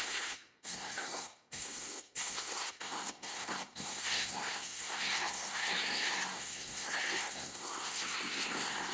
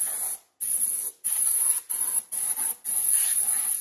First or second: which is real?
second